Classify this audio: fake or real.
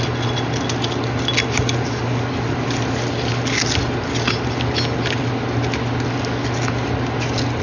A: real